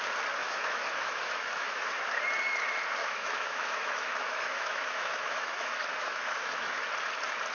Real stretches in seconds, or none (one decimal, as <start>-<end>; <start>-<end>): 0.0-0.4; 2.2-3.0; 6.9-7.5